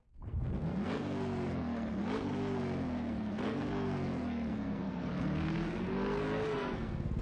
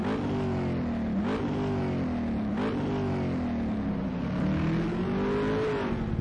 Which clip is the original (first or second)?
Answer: second